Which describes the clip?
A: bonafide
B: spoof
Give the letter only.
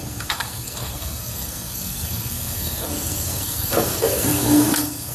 B